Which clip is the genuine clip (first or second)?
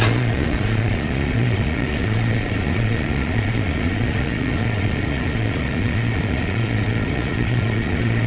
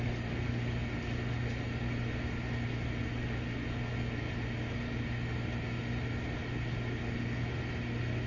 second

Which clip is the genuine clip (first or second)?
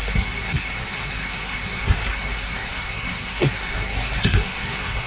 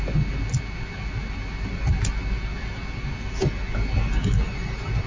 second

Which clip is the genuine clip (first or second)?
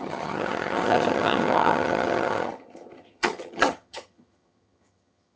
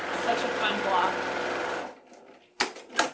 second